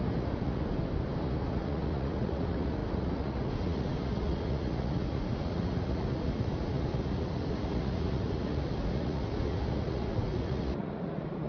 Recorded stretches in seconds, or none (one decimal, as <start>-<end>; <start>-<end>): 0.7-1.2